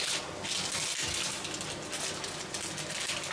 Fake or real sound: real